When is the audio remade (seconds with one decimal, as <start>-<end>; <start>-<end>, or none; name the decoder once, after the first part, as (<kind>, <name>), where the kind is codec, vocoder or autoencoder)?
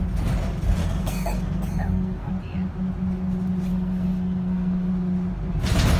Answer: 0.8-2.3 (codec, SNAC); 3.7-4.9